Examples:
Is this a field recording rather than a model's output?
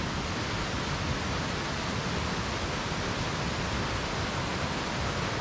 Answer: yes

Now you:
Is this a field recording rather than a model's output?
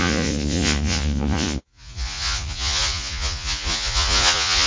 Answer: no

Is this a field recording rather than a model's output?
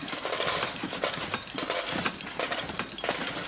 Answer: yes